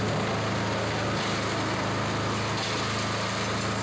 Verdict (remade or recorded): recorded